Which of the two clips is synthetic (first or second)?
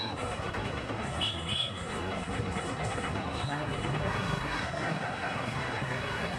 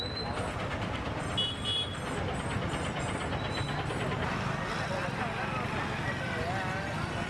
first